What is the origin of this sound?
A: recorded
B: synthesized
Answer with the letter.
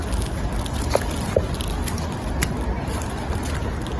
A